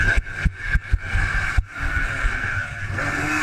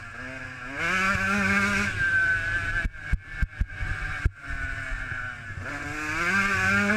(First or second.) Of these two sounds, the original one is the second